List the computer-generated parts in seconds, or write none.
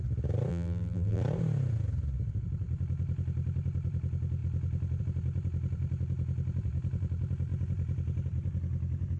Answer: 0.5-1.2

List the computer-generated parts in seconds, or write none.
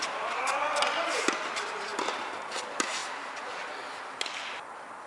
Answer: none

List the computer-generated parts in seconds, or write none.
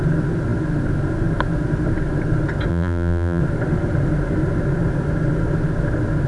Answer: 2.7-3.4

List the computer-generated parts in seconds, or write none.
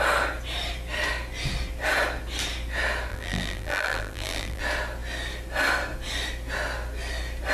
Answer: 3.1-4.6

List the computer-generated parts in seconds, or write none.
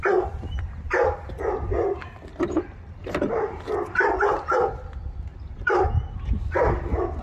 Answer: 2.3-4.1; 5.3-6.2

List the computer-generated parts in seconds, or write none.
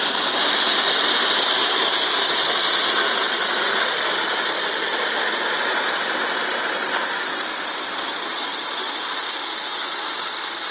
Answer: 3.2-5.4